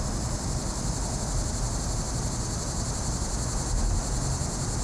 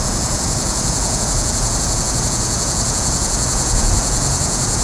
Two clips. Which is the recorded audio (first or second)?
first